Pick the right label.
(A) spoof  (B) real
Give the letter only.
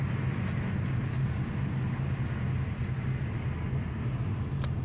B